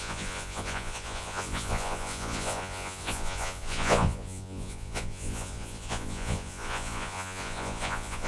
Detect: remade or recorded remade